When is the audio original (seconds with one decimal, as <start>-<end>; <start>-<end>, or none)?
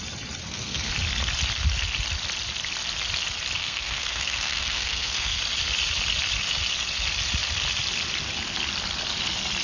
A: 0.0-0.4; 0.9-3.6; 5.4-9.6